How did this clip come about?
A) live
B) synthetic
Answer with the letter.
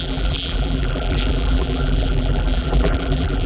B